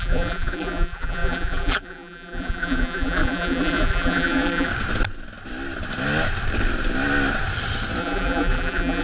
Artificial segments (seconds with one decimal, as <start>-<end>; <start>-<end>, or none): 0.0-4.7; 8.0-9.0

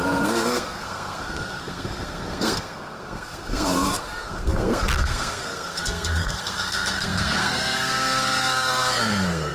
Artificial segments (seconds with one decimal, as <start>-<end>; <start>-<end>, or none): 0.0-9.5

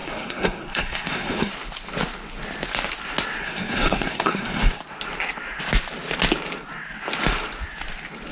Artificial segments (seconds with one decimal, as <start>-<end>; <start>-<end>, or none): 0.0-1.5; 3.4-4.8

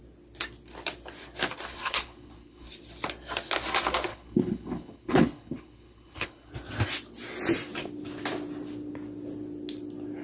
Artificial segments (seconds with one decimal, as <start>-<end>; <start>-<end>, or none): 1.7-2.7; 4.1-6.5

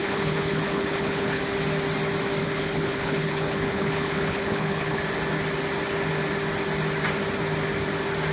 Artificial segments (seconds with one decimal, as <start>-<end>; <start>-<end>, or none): 0.0-1.4; 2.4-5.0